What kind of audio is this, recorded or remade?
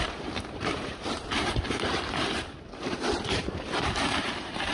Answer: remade